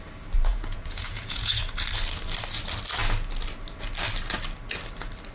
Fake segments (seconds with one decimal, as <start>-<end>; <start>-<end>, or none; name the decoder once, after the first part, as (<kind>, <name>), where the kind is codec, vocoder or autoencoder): 0.5-1.6 (vocoder, Vocos)